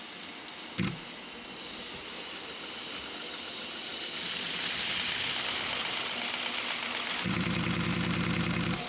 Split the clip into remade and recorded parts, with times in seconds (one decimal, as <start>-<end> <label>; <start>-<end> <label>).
0.0-8.9 recorded